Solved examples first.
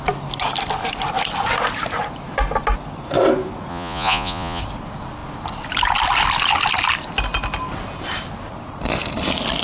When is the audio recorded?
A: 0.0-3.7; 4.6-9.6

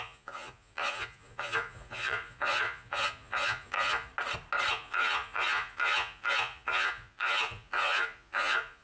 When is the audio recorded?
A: 4.1-4.7

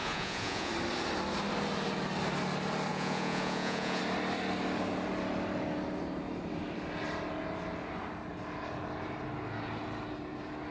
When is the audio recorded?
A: 0.7-2.9; 4.0-10.7